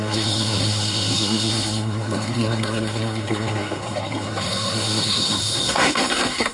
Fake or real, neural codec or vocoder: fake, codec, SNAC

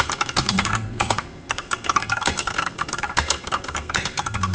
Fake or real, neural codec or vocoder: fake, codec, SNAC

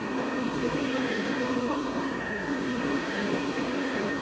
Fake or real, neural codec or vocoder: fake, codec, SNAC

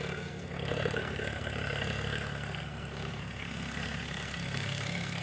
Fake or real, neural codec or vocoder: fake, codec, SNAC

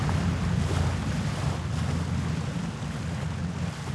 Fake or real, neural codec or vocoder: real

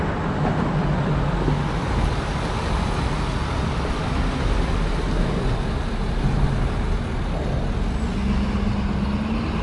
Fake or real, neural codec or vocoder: real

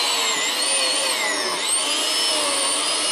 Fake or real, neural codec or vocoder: real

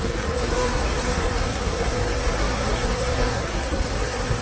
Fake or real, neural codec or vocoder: fake, codec, SNAC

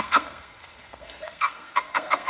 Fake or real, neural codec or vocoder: fake, codec, SNAC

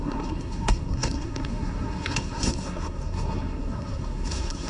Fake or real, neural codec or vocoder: fake, codec, SNAC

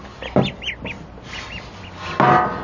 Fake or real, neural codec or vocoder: real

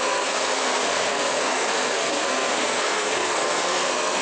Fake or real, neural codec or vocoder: fake, codec, SNAC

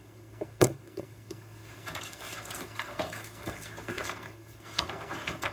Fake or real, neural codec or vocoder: fake, codec, SNAC